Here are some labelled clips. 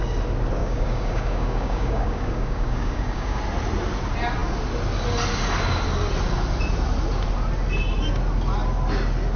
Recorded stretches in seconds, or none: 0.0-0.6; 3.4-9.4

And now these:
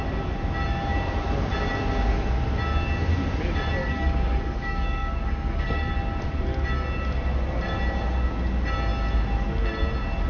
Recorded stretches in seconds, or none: 0.0-3.8; 5.9-10.3

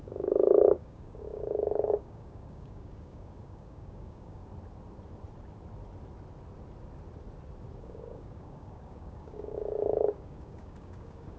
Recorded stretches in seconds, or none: 4.4-7.8

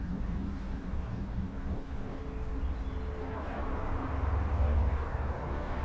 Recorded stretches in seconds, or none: 2.2-3.2; 3.6-4.5

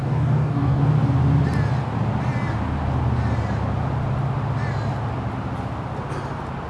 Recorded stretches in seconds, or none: 0.8-6.7

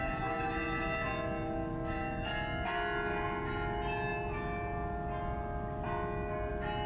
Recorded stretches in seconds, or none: 0.0-6.9